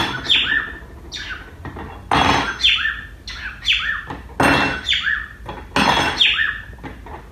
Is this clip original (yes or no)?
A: yes